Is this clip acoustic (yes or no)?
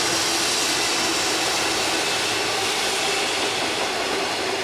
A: yes